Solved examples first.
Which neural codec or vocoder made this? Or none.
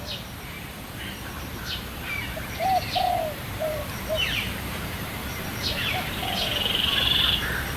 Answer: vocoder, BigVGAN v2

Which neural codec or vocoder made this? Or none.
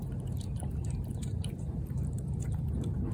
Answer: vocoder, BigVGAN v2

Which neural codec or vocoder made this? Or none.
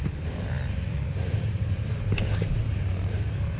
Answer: none